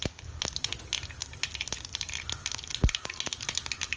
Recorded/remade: recorded